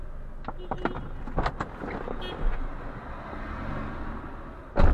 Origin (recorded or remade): recorded